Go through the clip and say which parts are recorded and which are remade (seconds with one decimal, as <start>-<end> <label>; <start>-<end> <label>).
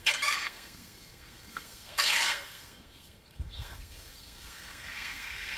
0.0-5.6 remade